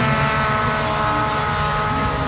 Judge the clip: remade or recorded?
recorded